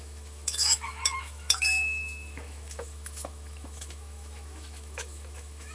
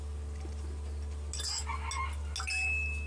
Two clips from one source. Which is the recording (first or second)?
second